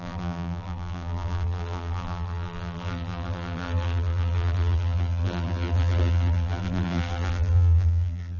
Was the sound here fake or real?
fake